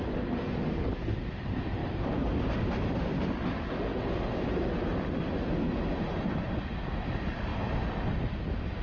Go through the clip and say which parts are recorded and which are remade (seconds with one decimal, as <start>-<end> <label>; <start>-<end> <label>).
0.0-1.8 recorded; 1.8-2.6 remade; 2.6-8.8 recorded